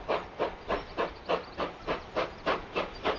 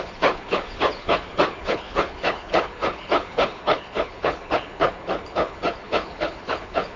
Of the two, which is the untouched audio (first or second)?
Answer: first